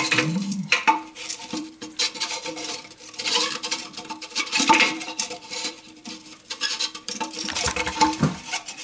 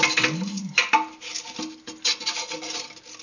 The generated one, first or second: first